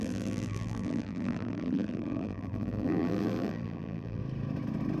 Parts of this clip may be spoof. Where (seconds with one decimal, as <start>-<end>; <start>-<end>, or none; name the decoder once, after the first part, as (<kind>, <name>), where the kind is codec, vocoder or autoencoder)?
0.0-4.2 (vocoder, BigVGAN v2)